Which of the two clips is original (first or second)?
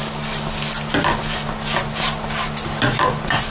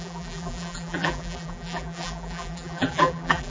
first